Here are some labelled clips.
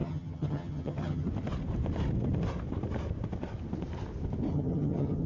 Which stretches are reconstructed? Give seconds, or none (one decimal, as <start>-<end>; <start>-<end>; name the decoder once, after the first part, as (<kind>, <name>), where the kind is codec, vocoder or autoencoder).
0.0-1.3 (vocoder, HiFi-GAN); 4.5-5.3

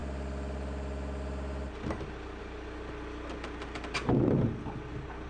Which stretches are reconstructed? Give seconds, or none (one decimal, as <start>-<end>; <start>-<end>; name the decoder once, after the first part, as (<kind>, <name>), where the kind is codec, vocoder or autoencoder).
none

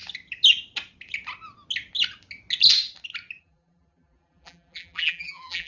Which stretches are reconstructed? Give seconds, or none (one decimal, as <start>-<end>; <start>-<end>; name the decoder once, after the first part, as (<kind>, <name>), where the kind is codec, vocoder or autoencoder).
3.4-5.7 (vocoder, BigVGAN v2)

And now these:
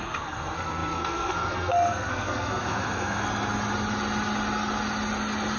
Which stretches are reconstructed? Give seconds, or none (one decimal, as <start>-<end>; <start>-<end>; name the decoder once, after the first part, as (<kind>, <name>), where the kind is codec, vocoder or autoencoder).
0.0-3.3 (codec, SNAC)

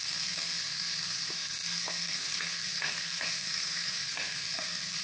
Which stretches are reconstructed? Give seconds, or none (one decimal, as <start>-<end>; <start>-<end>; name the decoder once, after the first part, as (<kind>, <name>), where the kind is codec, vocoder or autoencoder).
0.0-5.0 (codec, SNAC)